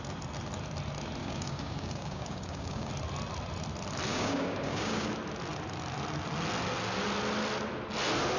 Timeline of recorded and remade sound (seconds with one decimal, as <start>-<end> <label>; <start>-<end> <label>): 0.0-1.2 recorded; 1.2-2.9 remade; 2.9-4.1 recorded; 4.1-5.1 remade; 5.1-8.4 recorded